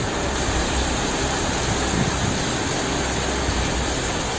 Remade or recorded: recorded